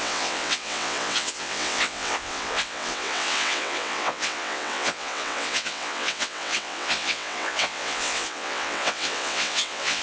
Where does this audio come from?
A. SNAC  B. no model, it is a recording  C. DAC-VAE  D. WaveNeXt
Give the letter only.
D